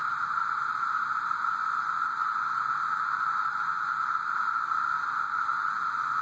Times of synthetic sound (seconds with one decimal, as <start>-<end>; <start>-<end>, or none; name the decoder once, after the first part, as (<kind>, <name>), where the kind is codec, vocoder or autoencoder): 1.8-4.1 (vocoder, Vocos); 5.5-6.2